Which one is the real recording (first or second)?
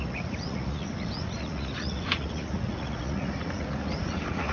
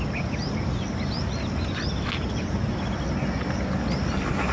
second